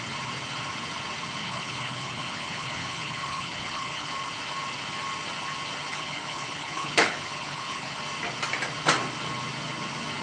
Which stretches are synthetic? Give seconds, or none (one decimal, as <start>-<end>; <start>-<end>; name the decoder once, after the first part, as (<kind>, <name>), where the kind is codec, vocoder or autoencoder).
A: 1.4-4.1 (codec, HILCodec); 5.9-8.0